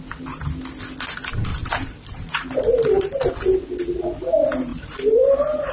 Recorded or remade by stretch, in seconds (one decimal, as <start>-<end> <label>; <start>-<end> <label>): 0.0-1.5 recorded; 1.5-3.3 remade; 3.3-4.7 recorded; 4.7-5.7 remade